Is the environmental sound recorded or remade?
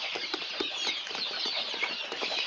remade